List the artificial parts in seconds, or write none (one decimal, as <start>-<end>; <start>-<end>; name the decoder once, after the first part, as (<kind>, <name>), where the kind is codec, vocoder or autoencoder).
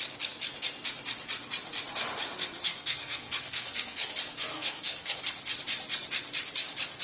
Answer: 2.6-4.1 (codec, SNAC); 4.5-5.2